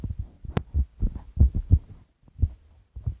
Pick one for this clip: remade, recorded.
recorded